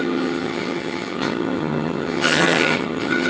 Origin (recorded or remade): remade